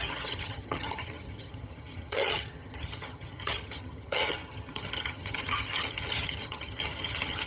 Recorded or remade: remade